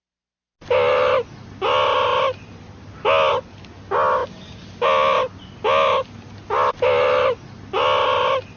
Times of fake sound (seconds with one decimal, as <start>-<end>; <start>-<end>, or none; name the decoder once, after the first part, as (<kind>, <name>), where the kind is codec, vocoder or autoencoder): none